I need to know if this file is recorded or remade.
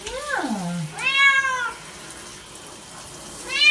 recorded